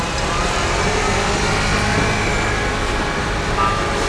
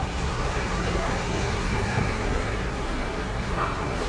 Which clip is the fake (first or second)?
second